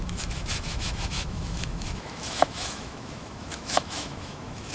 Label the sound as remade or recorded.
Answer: remade